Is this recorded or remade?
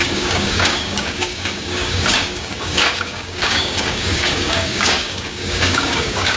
remade